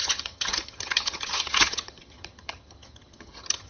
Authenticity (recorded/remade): remade